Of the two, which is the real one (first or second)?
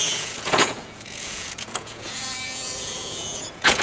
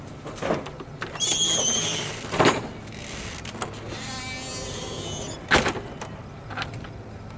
second